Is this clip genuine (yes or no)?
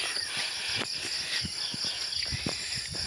yes